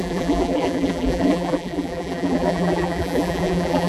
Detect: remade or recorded remade